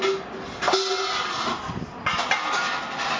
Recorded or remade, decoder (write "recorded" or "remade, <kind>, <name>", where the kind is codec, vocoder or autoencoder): recorded